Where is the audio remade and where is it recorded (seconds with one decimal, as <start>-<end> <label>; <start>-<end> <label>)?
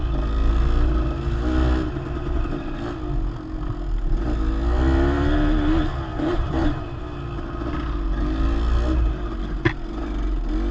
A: 0.0-6.1 recorded; 6.1-7.0 remade; 7.0-10.7 recorded